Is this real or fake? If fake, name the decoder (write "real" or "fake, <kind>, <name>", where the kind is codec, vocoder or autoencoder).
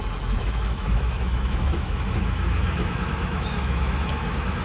fake, autoencoder, DAC-VAE